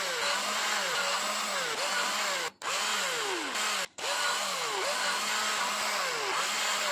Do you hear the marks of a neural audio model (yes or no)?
no